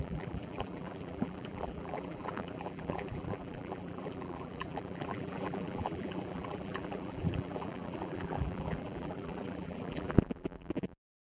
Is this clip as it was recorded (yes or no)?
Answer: no